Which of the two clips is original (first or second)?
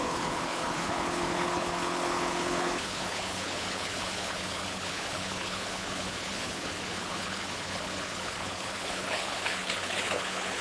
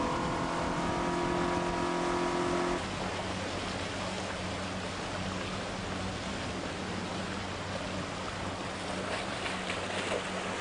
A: second